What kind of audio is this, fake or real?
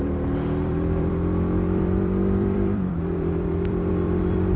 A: fake